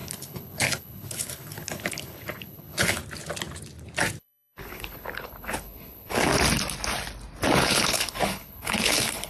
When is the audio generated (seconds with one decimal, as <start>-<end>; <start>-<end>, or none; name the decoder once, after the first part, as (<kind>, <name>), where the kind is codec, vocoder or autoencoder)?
0.0-3.0 (codec, HILCodec); 4.2-6.3; 7.6-9.3